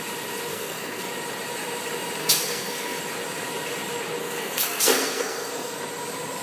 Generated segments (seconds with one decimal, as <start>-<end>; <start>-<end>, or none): 0.5-1.1; 2.2-3.0; 4.2-5.8